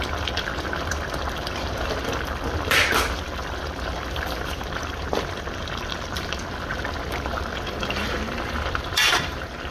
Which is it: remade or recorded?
remade